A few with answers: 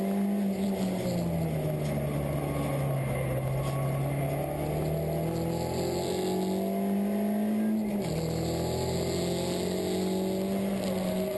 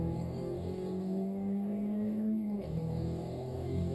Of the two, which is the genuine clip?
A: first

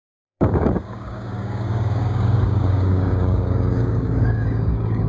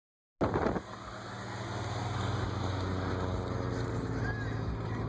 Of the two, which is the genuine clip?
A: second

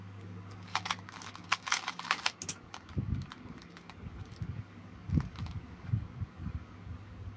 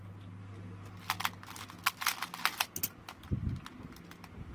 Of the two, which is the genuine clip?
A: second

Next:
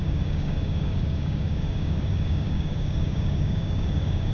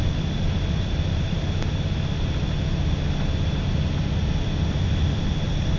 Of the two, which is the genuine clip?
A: second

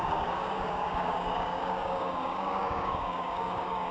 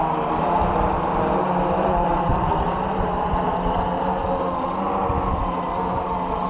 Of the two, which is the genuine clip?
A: second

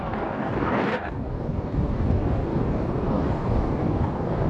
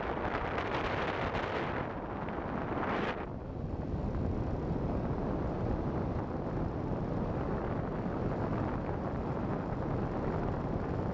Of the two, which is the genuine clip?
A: second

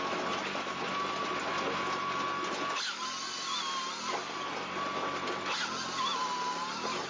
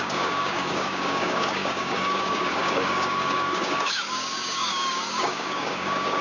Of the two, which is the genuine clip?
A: first